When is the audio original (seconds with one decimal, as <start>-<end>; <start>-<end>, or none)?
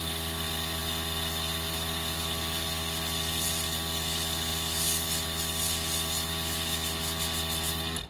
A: 0.0-8.1